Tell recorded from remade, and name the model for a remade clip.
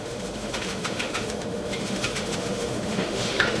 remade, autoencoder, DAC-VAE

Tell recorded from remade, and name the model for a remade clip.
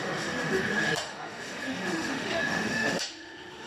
remade, autoencoder, DAC-VAE